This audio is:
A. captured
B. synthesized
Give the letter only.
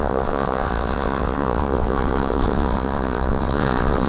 B